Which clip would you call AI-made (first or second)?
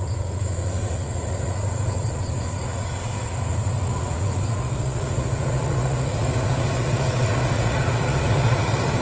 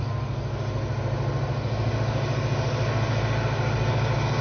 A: first